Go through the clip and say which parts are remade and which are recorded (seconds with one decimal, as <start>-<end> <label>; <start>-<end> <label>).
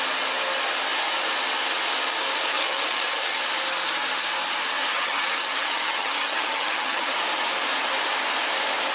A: 0.0-2.5 recorded; 2.5-3.4 remade; 3.4-4.9 recorded; 4.9-7.1 remade; 7.1-8.9 recorded